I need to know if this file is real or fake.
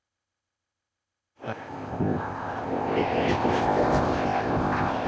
fake